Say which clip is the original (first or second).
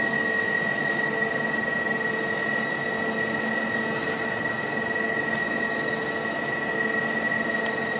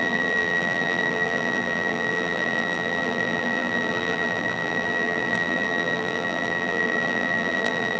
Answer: first